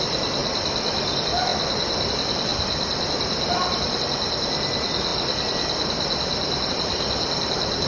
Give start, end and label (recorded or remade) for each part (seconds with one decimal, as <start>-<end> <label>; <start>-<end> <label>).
0.0-0.4 recorded; 0.4-1.1 remade; 1.1-1.5 recorded; 1.5-2.1 remade; 2.1-7.9 recorded